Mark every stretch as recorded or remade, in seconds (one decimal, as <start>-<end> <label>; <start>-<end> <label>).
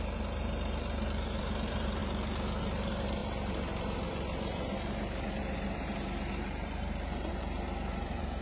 0.0-2.0 remade; 2.0-2.6 recorded; 2.6-8.4 remade